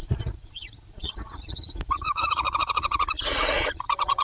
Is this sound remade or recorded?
remade